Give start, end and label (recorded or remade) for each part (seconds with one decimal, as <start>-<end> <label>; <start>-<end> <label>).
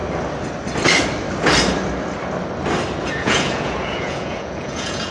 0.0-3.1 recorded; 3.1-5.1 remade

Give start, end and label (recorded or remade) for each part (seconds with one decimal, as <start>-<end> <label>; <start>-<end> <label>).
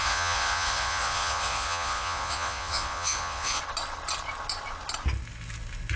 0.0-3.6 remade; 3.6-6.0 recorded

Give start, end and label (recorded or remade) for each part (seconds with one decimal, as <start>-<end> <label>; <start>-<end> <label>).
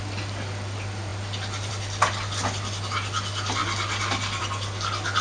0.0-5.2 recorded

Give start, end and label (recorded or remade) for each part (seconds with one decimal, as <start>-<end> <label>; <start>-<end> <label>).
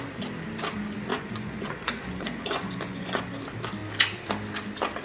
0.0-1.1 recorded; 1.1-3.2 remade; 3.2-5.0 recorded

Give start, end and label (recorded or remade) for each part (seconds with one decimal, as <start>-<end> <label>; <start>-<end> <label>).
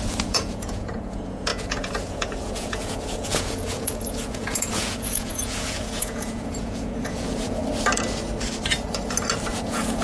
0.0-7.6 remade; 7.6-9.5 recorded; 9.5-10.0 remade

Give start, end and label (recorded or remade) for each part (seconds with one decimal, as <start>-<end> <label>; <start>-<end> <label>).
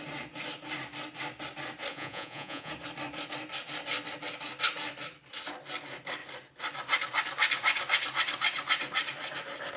0.0-1.9 recorded; 1.9-2.7 remade; 2.7-9.8 recorded